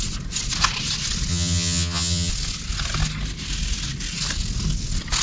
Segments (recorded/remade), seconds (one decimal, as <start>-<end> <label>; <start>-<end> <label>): 0.0-1.3 recorded; 1.3-2.3 remade; 2.3-5.2 recorded